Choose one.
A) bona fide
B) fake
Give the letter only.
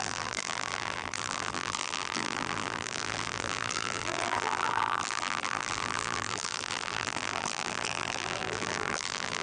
B